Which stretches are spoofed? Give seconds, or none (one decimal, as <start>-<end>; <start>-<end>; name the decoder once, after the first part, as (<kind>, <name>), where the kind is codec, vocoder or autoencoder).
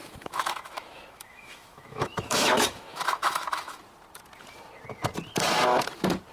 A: 0.0-3.8 (autoencoder, DAC-VAE)